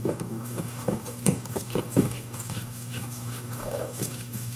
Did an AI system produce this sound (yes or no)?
yes